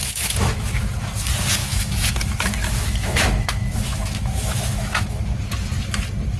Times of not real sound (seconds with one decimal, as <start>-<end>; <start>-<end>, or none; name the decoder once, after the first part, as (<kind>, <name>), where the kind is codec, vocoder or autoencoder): 0.0-0.8 (autoencoder, DAC-VAE); 1.6-5.2